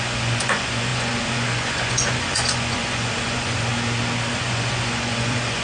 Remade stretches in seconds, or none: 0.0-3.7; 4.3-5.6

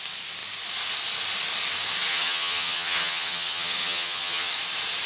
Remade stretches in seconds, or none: 2.1-4.5

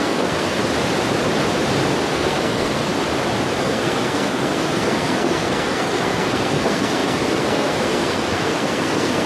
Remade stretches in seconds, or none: 0.0-0.6; 2.1-2.9; 3.6-9.3

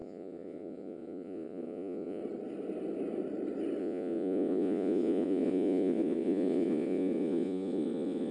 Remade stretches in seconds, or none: 0.0-2.2; 3.8-8.3

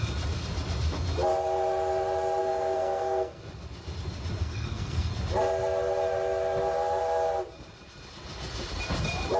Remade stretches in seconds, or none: 2.4-3.4; 4.4-5.1

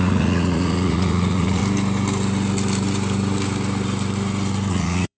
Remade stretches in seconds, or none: 0.0-1.6; 4.7-5.2

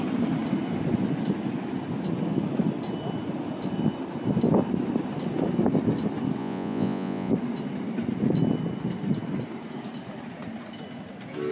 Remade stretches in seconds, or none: 6.4-7.3